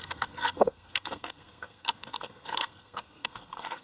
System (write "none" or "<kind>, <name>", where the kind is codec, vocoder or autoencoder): codec, SNAC